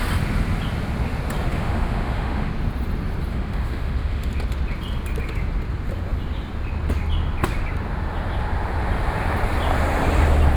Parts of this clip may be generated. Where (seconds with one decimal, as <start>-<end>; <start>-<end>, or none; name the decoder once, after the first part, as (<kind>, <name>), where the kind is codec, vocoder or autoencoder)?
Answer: 1.5-2.5 (autoencoder, DAC-VAE); 3.3-4.3